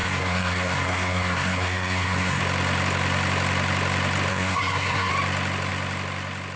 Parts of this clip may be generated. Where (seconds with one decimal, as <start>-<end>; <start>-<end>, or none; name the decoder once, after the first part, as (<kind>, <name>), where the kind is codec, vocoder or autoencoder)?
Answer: 0.0-2.4 (codec, SNAC); 4.3-5.1